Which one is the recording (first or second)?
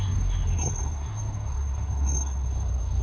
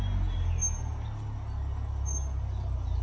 second